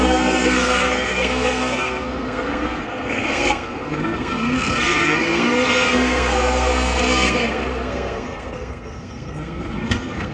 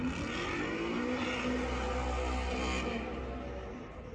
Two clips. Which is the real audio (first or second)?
second